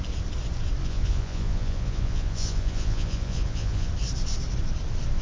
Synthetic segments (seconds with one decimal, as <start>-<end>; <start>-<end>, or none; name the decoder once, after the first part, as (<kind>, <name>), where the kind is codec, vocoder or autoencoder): 0.8-3.9 (vocoder, Vocos)